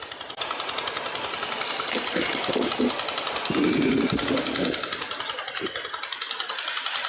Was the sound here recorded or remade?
recorded